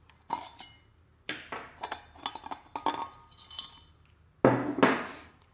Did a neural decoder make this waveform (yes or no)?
no